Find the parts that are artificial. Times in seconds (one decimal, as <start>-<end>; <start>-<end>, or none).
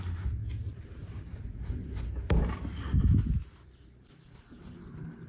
0.0-0.4; 1.2-3.2; 4.1-5.3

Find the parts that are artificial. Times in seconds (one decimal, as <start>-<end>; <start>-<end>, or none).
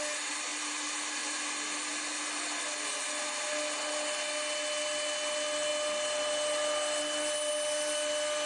none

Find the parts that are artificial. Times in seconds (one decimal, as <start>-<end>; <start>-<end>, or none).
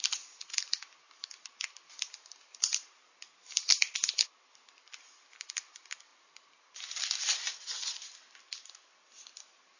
2.7-5.1; 6.1-8.4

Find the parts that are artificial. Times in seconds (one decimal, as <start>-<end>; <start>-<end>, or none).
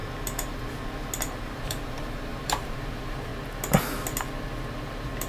1.2-3.3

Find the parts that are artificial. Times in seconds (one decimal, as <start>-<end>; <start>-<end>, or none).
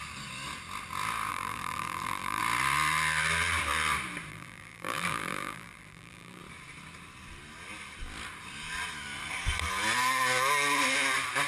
1.3-2.4; 4.3-6.4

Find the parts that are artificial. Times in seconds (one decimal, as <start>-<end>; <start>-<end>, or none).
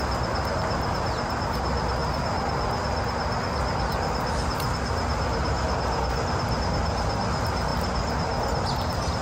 none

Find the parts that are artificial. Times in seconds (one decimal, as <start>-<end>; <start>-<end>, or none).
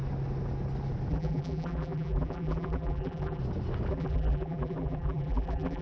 1.1-3.4; 3.9-5.8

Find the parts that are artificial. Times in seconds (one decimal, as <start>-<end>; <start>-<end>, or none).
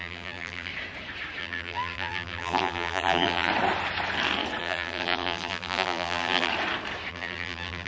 0.0-0.7; 1.4-3.5; 4.6-6.5; 7.1-7.9